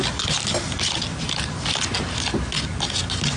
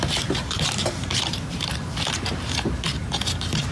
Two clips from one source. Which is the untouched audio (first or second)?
first